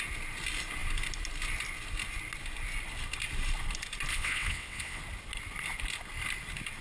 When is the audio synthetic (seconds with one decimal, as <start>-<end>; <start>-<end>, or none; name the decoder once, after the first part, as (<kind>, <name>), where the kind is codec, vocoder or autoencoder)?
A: 4.1-5.0 (vocoder, WaveNeXt)

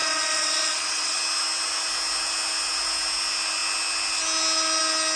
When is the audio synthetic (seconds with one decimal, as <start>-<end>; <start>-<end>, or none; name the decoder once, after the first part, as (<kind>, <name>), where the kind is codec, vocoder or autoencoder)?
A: 0.0-1.2 (vocoder, WaveNeXt)

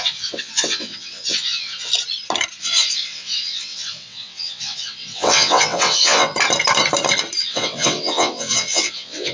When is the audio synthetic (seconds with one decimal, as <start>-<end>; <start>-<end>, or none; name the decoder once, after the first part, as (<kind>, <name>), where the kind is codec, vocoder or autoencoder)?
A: 0.0-1.9 (vocoder, WaveNeXt); 2.6-6.3; 7.4-9.3

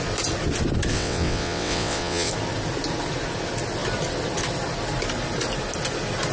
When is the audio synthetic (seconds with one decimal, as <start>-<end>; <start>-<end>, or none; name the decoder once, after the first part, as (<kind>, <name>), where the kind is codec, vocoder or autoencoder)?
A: 0.9-2.3 (vocoder, WaveNeXt)

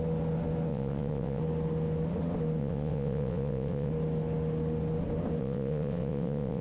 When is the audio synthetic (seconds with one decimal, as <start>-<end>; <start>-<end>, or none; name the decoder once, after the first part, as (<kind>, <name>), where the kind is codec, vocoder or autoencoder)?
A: 0.7-1.4 (vocoder, WaveNeXt); 2.6-3.9; 5.4-6.6

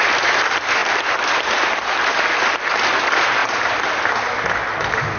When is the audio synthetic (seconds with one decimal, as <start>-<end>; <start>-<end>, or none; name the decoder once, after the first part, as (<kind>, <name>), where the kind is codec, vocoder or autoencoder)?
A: none